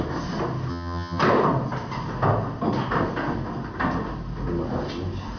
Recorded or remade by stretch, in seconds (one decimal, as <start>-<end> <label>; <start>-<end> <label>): 0.0-0.7 recorded; 0.7-1.2 remade; 1.2-5.4 recorded